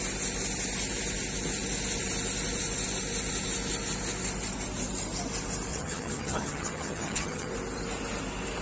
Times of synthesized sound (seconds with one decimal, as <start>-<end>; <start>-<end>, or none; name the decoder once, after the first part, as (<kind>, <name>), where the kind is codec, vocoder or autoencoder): 5.7-7.5 (vocoder, HiFi-GAN)